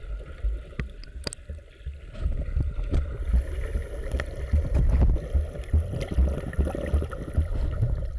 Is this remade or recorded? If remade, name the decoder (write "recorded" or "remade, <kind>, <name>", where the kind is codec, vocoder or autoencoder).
recorded